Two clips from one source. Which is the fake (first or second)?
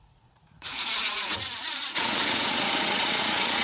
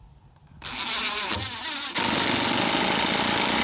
first